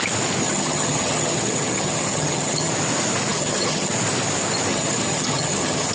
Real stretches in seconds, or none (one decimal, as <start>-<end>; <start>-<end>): 0.0-0.4; 2.7-3.3; 3.9-4.7